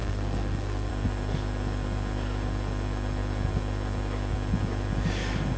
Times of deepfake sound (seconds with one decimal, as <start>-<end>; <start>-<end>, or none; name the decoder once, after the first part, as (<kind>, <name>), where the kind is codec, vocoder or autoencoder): 0.0-0.9 (codec, SNAC)